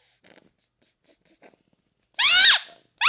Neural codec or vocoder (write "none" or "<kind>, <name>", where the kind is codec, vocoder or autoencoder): none